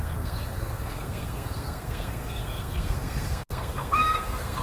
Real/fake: fake